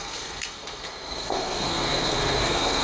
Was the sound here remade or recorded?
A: remade